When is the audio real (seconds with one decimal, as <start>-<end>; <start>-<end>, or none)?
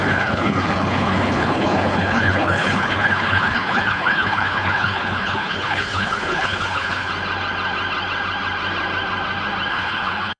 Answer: 7.1-9.7